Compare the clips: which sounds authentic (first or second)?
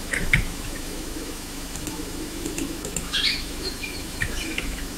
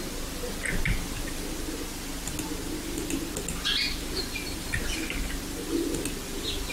second